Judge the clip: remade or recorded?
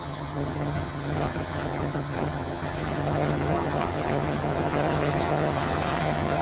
remade